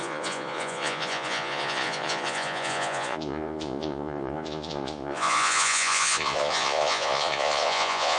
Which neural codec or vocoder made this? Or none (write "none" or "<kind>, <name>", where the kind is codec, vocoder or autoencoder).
vocoder, Vocos